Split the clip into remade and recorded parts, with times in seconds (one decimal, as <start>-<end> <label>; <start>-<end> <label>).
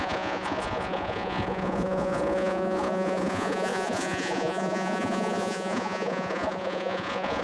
0.0-7.4 remade